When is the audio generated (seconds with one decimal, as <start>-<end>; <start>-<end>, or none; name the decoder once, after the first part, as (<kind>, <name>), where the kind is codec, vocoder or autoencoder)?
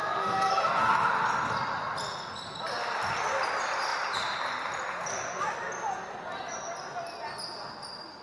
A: 0.0-1.0 (codec, SNAC)